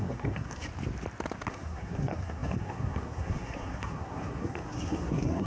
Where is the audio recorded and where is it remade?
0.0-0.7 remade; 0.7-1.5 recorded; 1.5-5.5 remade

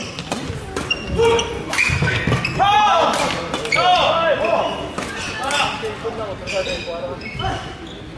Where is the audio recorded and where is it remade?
0.0-1.8 recorded; 1.8-2.3 remade; 2.3-8.2 recorded

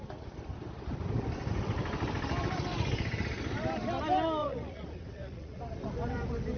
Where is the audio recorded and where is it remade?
0.0-4.4 recorded; 4.4-5.6 remade; 5.6-6.6 recorded